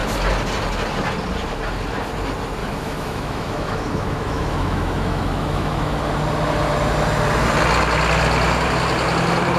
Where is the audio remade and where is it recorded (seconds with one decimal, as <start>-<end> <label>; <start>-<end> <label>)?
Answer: 0.0-2.6 recorded; 2.6-6.0 remade; 6.0-9.6 recorded